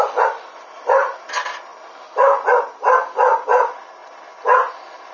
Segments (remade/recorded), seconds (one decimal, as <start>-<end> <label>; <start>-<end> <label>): 0.0-1.7 remade; 1.7-3.6 recorded; 3.6-4.0 remade; 4.0-5.1 recorded